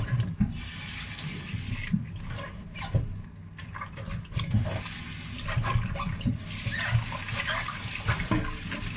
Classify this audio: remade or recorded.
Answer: recorded